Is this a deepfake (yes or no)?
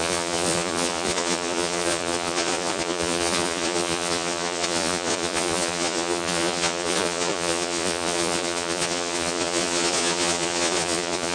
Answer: yes